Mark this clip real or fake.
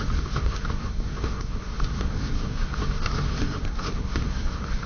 fake